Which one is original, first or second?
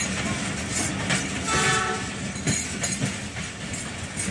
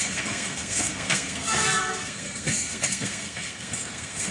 first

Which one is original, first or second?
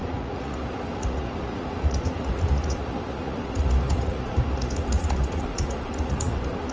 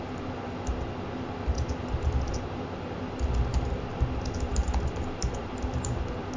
second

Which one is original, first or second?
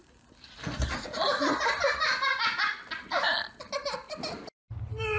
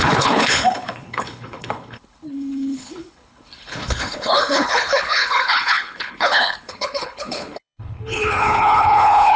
first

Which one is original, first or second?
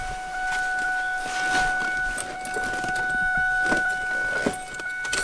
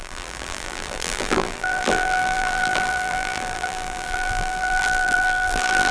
first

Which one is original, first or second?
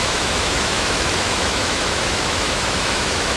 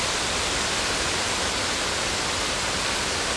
second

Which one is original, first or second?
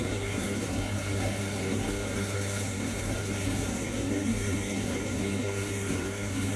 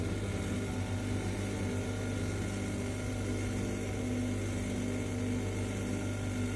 second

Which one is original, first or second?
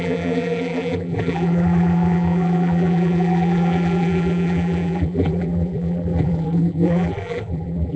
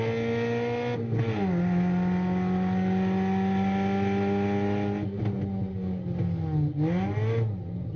second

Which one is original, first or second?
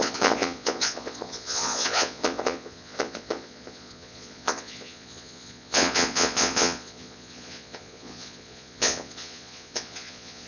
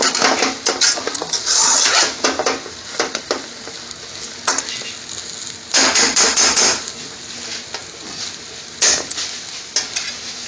second